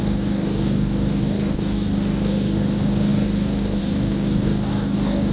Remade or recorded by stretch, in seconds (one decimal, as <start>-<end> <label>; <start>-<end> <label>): 0.0-5.3 remade